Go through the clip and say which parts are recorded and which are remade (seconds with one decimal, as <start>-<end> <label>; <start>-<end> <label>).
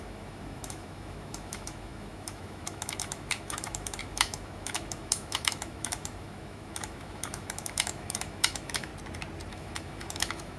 0.0-8.9 remade; 8.9-9.5 recorded; 9.5-10.6 remade